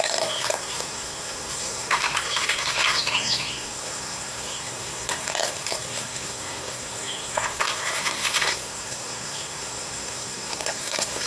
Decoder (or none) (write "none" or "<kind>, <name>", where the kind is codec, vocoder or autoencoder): codec, SNAC